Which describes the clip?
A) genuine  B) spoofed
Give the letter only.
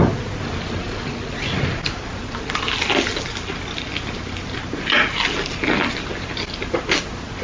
A